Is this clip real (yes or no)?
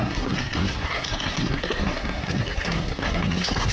no